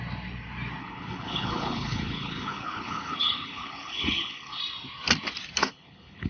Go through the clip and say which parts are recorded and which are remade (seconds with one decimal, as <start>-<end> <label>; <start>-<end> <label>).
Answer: 0.0-0.8 recorded; 0.8-4.6 remade; 4.6-5.6 recorded; 5.6-6.3 remade